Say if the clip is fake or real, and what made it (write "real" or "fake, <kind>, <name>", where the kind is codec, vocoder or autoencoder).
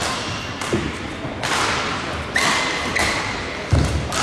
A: real